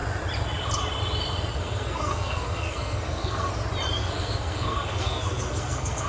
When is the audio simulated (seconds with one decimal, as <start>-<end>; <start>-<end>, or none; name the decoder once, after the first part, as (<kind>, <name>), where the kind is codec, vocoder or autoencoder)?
1.5-3.5 (codec, SNAC); 4.0-6.1